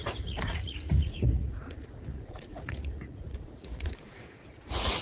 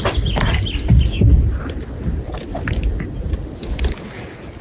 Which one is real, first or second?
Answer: second